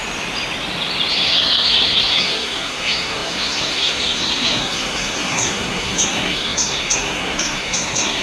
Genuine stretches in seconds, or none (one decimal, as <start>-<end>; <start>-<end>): 0.0-1.1